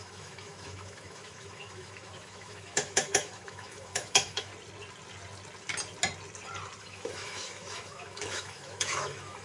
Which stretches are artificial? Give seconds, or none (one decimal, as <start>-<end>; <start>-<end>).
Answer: 0.0-4.5; 6.8-9.4